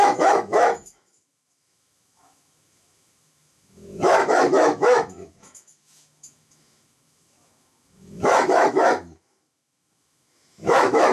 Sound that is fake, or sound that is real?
fake